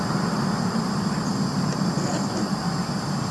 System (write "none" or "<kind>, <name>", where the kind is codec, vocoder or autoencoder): none